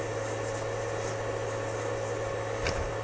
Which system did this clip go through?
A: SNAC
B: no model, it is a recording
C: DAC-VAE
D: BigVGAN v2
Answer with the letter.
B